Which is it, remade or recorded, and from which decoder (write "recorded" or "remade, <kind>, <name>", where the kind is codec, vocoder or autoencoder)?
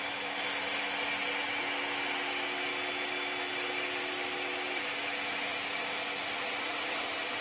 recorded